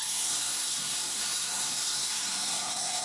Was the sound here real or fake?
fake